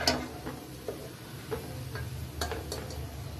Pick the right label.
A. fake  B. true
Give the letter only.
B